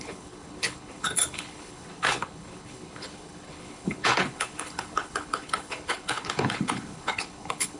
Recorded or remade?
remade